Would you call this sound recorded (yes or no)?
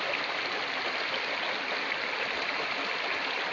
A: yes